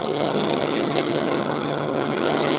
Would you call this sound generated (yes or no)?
yes